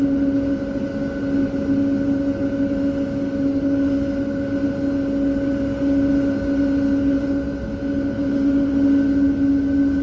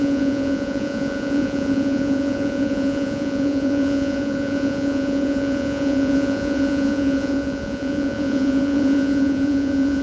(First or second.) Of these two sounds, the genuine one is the first